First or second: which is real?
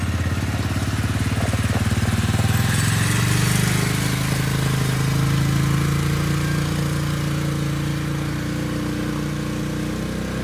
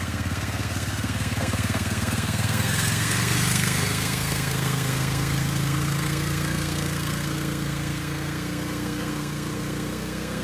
first